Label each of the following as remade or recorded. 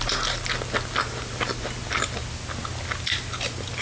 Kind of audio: recorded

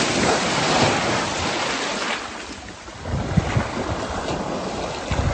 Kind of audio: recorded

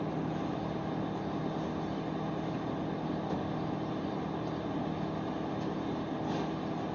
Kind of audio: recorded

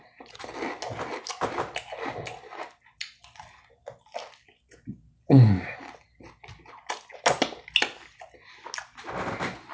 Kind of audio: recorded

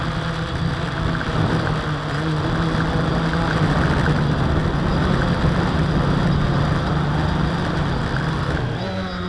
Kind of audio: recorded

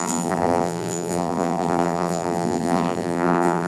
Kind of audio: remade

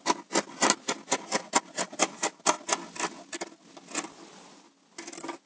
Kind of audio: recorded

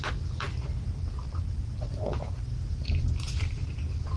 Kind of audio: recorded